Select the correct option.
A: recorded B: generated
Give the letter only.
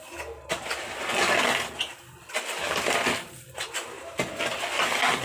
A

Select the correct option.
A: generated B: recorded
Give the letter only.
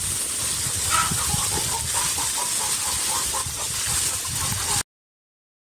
B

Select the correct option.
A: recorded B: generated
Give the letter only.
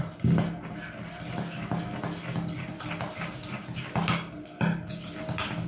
A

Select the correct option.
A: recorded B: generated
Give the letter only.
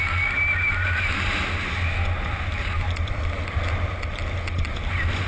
A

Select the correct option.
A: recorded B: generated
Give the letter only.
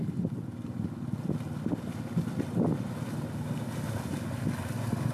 A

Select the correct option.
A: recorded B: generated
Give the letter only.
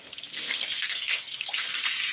B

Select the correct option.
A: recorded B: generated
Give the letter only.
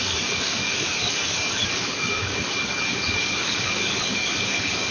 B